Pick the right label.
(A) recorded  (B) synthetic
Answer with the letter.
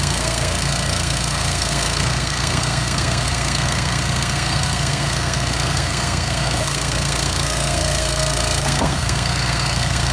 B